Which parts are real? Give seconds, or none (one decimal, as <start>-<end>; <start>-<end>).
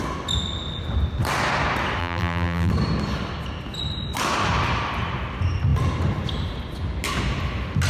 0.0-2.0; 2.7-7.9